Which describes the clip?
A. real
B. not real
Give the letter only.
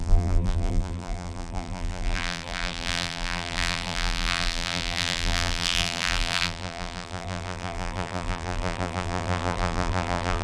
B